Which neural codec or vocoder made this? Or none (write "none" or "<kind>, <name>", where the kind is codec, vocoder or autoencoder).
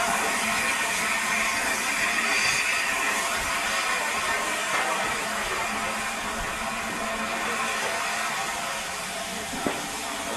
none